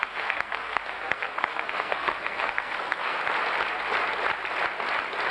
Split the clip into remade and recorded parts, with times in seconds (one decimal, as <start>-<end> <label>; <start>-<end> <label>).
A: 0.0-3.2 remade; 3.2-5.3 recorded